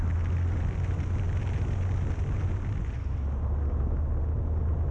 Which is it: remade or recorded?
recorded